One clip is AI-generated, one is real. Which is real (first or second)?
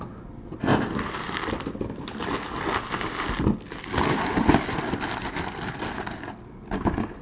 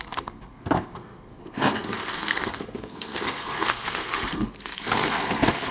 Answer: first